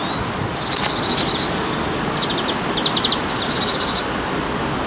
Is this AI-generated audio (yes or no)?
no